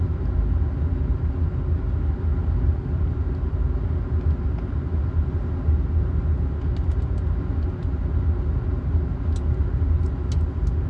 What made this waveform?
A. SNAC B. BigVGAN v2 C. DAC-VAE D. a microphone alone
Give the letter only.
D